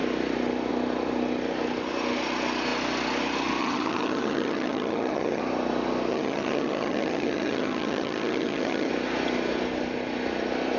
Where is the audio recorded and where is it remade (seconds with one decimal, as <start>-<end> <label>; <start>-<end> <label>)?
0.0-3.6 recorded; 3.6-5.4 remade; 5.4-6.1 recorded; 6.1-8.9 remade; 8.9-10.8 recorded